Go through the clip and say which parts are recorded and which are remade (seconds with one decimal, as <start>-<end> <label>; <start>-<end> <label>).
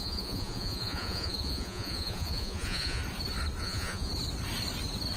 0.0-3.0 remade; 3.0-3.6 recorded; 3.6-4.1 remade; 4.1-5.2 recorded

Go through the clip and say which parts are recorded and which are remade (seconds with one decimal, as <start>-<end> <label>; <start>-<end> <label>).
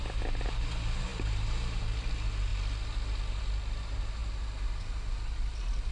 0.0-5.9 recorded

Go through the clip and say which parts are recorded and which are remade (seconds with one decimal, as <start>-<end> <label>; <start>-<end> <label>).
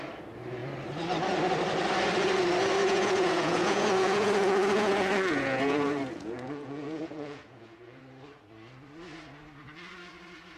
0.0-2.8 recorded; 2.8-8.0 remade; 8.0-10.6 recorded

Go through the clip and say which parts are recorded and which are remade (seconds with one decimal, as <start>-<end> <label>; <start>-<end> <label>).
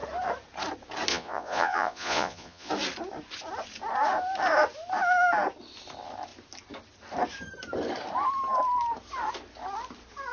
0.0-1.1 recorded; 1.1-2.7 remade; 2.7-10.3 recorded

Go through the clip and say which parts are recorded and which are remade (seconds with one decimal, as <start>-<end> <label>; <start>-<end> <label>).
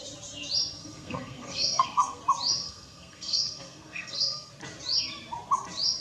0.0-0.8 recorded; 0.8-2.2 remade; 2.2-2.6 recorded; 2.6-4.5 remade; 4.5-6.0 recorded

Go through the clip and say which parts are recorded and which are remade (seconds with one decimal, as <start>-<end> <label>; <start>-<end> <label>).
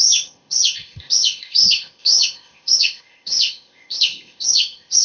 0.0-5.0 remade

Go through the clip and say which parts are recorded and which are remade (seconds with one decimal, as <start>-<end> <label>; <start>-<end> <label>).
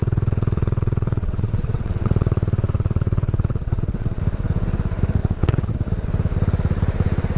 0.0-4.2 remade; 4.2-5.2 recorded; 5.2-5.7 remade; 5.7-7.4 recorded